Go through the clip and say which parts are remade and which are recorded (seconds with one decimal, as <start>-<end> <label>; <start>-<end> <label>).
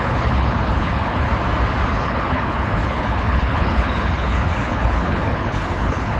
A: 0.0-1.3 remade; 1.3-1.9 recorded; 1.9-6.2 remade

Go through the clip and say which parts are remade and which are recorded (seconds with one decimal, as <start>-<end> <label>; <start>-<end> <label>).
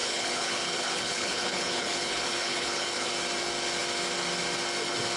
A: 0.0-3.1 remade; 3.1-5.2 recorded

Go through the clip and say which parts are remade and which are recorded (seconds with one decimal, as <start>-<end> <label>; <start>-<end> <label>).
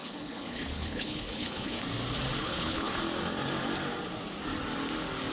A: 0.0-1.8 remade; 1.8-2.4 recorded; 2.4-3.0 remade; 3.0-5.3 recorded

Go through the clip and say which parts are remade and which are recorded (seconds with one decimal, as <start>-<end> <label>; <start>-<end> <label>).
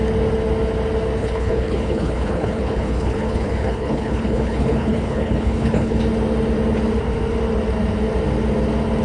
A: 0.0-1.2 recorded; 1.2-6.0 remade; 6.0-9.0 recorded